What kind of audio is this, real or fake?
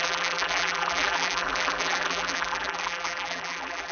fake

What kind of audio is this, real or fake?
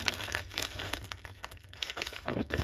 fake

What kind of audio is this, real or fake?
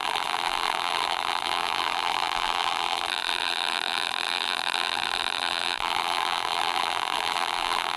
fake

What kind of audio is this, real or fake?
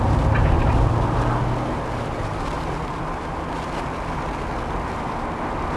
real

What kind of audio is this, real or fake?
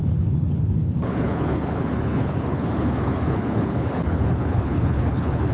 fake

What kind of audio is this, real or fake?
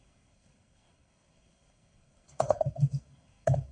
fake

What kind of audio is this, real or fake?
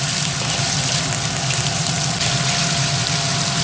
fake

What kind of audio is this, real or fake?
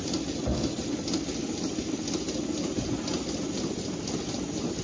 real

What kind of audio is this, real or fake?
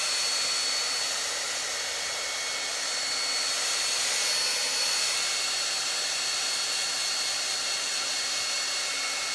real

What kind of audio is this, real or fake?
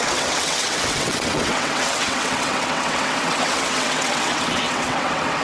fake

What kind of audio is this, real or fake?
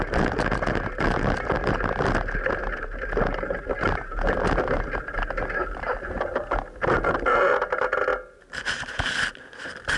real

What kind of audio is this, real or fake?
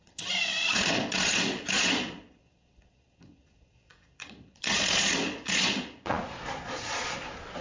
fake